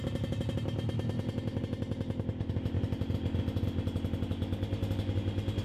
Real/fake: real